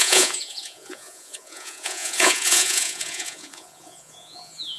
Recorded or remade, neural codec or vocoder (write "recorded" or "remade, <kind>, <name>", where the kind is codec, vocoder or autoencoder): remade, vocoder, Vocos